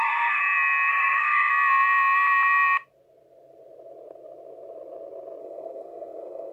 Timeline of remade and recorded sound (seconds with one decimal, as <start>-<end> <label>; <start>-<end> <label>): 0.0-0.4 remade; 0.4-0.9 recorded; 0.9-1.5 remade; 1.5-5.4 recorded; 5.4-6.5 remade